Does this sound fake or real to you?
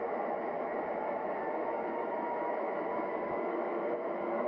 fake